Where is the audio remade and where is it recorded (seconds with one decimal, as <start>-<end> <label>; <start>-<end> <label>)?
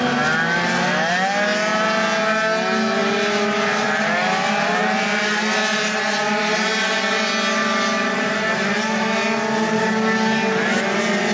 0.0-3.0 recorded; 3.0-5.4 remade; 5.4-7.6 recorded; 7.6-10.8 remade; 10.8-11.3 recorded